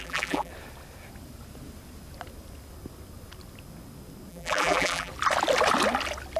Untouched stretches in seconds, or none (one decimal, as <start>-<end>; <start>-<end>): 0.5-4.3; 5.1-6.4